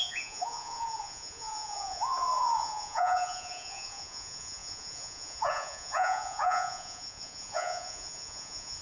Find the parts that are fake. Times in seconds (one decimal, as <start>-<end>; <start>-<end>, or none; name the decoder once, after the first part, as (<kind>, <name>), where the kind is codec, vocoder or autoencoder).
0.0-8.8 (vocoder, Vocos)